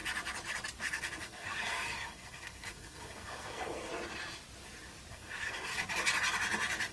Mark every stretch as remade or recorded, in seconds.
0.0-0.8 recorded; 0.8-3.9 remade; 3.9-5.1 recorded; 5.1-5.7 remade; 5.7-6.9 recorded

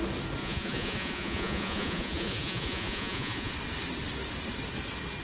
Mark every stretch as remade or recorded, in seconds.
0.0-0.4 recorded; 0.4-3.5 remade; 3.5-5.2 recorded